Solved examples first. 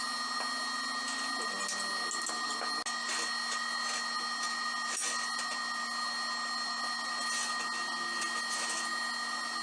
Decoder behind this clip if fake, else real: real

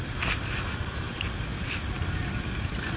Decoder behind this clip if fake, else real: real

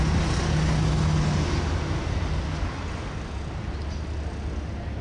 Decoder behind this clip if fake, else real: real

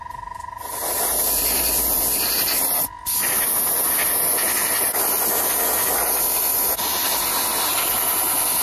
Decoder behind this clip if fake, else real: real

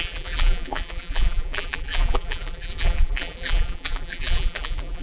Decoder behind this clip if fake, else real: fake, vocoder, BigVGAN v2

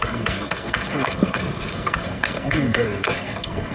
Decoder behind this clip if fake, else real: fake, codec, SNAC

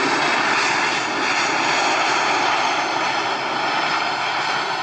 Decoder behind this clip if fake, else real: real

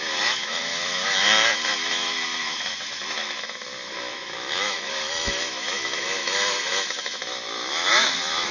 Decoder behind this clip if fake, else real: fake, autoencoder, DAC-VAE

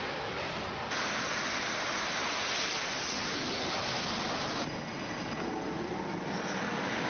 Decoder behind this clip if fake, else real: real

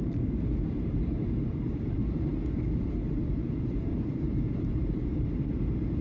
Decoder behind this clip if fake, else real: fake, vocoder, BigVGAN v2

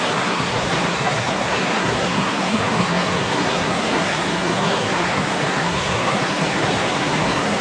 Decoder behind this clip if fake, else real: fake, codec, SNAC